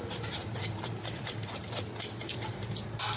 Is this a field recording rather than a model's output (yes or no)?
no